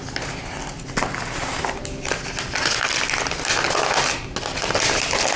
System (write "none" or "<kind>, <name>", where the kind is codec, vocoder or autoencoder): none